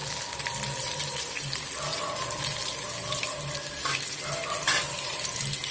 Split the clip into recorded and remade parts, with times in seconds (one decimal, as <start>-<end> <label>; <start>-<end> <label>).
0.0-5.7 recorded